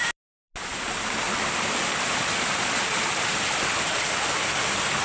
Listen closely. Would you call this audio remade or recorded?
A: recorded